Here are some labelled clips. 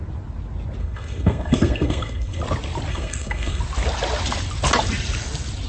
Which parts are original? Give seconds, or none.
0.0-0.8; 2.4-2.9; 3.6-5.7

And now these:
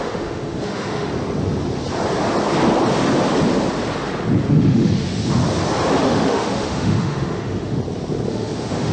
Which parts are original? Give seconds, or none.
1.1-4.5; 5.4-6.0; 7.8-8.3

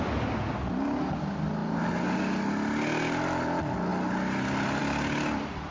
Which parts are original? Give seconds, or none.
0.0-5.7

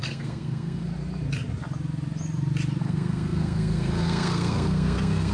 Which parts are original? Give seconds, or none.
0.9-2.8